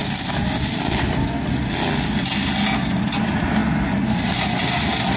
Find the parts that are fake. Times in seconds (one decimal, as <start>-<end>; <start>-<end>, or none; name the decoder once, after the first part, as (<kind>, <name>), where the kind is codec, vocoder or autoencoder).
none